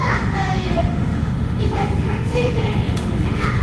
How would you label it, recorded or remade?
remade